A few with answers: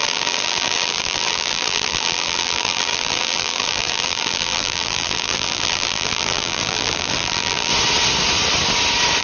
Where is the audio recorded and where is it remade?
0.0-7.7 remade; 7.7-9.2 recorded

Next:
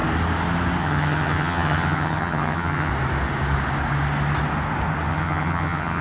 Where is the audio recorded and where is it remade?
0.0-0.8 recorded; 0.8-2.9 remade; 2.9-5.1 recorded; 5.1-6.0 remade

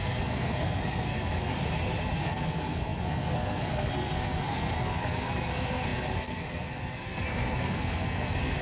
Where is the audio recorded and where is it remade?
0.0-1.5 remade; 1.5-2.0 recorded; 2.0-8.6 remade